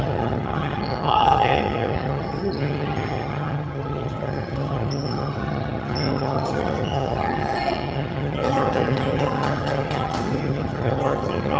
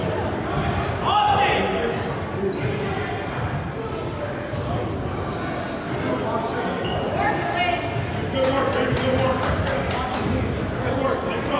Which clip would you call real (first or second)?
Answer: second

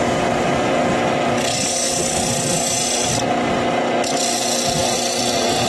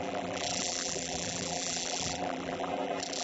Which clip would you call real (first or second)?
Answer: first